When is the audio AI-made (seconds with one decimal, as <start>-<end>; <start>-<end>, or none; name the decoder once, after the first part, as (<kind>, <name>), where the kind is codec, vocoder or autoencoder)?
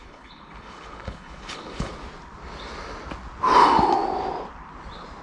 0.0-1.9 (codec, HILCodec)